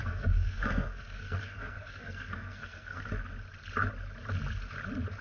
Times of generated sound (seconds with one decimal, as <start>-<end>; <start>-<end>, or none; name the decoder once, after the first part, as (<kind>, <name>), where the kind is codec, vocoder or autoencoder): 0.0-3.1 (codec, SNAC)